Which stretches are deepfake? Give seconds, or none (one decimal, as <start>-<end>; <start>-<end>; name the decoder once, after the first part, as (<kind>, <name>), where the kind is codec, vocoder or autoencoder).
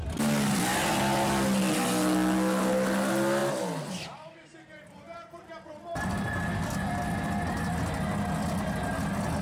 none